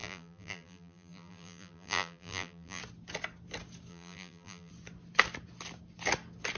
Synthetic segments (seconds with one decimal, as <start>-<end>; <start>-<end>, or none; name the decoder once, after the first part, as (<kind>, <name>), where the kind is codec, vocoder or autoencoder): 0.0-2.8 (vocoder, BigVGAN v2); 3.9-4.7

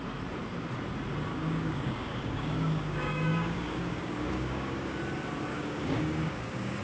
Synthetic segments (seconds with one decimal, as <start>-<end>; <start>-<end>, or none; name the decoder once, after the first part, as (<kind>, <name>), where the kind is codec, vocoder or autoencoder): 1.3-5.0 (codec, DAC); 5.5-6.8

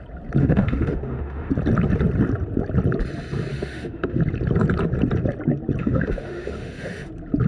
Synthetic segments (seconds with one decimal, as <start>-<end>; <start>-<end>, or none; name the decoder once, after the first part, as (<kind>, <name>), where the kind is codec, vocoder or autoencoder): 0.4-1.5 (autoencoder, DAC-VAE); 3.5-4.2; 5.8-7.1

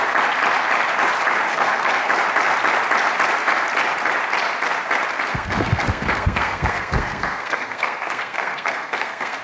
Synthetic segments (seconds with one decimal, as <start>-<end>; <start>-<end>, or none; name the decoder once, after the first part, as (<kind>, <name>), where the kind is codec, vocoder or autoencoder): 1.5-2.1 (codec, SNAC); 5.3-9.4

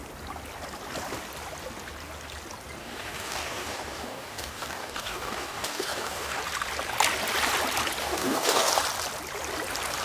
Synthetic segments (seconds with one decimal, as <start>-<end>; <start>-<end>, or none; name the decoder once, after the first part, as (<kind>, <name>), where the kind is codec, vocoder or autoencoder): 2.8-6.4 (codec, DAC); 8.0-8.7

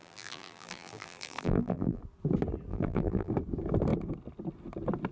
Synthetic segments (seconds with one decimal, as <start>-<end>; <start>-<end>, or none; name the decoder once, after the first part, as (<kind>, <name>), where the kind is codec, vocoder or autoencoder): 0.0-2.0 (vocoder, BigVGAN v2); 2.7-3.3